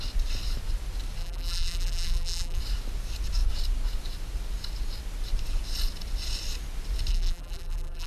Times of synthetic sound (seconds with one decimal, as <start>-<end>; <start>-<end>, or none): 1.2-2.6; 7.1-8.1